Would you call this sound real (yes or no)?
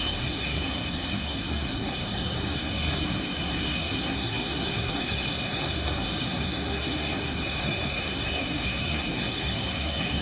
no